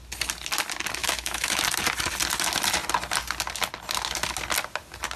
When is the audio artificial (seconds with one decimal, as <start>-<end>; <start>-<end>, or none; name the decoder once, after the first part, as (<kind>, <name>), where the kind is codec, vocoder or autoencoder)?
1.0-1.6 (autoencoder, DAC-VAE)